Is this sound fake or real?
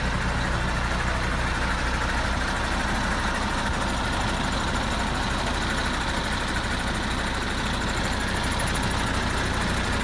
real